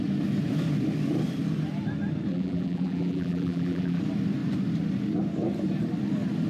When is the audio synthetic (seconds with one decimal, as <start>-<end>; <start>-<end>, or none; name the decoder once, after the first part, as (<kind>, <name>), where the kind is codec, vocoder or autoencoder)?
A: 2.3-4.0 (vocoder, BigVGAN v2)